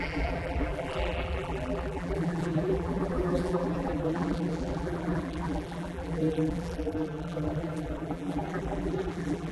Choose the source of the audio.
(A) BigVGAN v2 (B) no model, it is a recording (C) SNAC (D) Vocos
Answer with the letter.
A